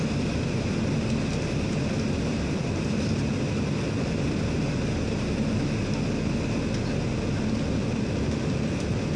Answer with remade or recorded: recorded